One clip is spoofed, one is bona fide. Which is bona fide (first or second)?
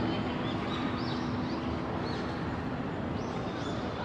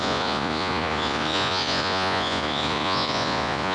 first